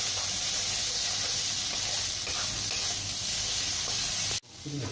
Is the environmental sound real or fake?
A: real